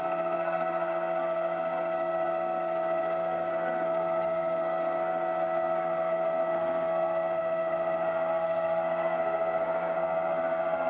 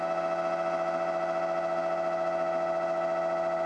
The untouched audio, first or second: second